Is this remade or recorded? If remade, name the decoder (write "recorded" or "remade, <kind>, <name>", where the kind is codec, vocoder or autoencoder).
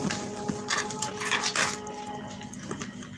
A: recorded